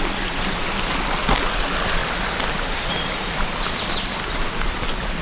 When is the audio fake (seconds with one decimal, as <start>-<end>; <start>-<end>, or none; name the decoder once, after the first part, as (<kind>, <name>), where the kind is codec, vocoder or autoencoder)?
none